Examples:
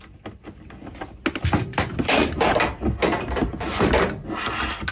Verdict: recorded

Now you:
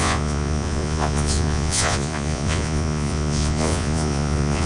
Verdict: remade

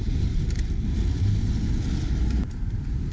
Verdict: recorded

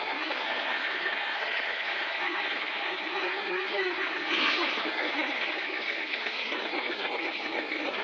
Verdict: remade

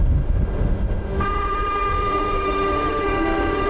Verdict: remade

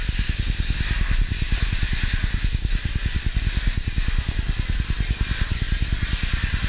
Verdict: recorded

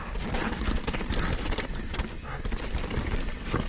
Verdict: recorded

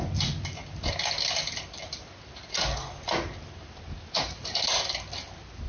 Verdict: recorded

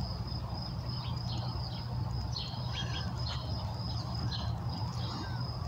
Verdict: recorded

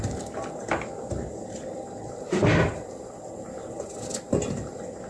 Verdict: recorded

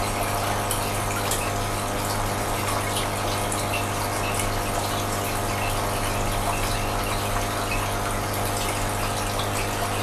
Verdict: recorded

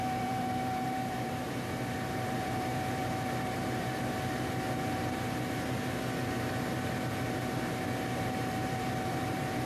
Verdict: remade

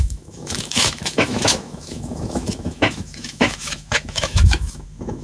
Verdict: remade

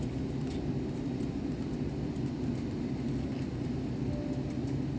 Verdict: recorded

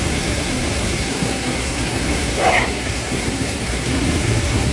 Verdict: remade